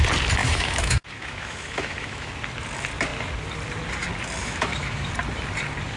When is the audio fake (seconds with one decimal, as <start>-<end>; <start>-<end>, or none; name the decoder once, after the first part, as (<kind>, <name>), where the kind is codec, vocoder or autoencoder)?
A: 0.4-2.3 (autoencoder, DAC-VAE); 4.4-5.1